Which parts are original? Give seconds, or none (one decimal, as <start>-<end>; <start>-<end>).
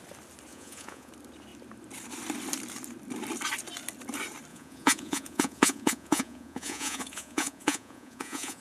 0.0-0.5; 1.1-4.5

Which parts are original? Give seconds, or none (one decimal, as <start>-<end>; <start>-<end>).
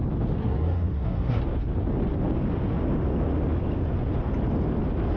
0.0-0.4; 1.4-5.2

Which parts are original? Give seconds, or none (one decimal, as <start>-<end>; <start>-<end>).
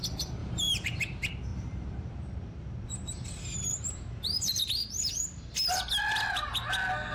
0.0-0.4; 1.0-1.5; 5.8-7.1